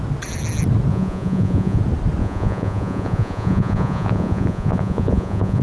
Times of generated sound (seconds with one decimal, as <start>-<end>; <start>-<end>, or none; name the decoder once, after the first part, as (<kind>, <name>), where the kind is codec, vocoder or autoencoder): 0.9-1.8 (vocoder, Vocos); 2.2-5.6